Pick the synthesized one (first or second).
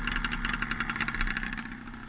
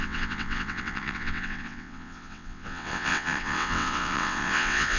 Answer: second